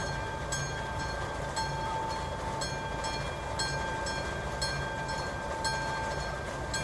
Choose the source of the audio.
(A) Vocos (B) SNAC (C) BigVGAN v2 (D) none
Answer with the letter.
D